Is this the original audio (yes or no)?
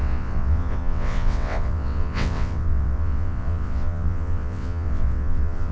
no